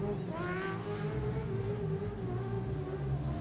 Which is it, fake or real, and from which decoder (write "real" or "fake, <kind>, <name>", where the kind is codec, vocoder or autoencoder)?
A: real